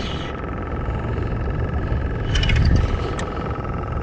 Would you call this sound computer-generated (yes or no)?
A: no